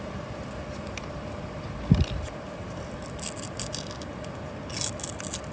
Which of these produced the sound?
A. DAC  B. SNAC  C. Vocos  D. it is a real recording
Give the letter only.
D